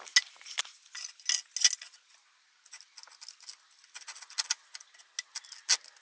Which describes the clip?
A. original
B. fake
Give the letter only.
A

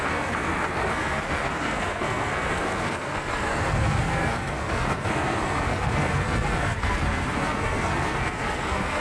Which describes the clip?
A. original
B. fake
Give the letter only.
B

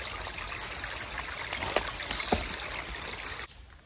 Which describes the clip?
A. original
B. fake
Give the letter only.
A